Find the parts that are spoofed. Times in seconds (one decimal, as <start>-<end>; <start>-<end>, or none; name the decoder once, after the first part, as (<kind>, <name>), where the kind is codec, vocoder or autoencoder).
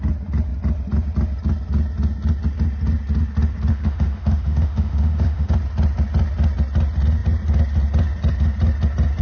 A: 3.7-5.5 (autoencoder, DAC-VAE)